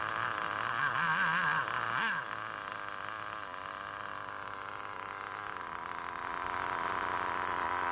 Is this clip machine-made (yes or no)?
no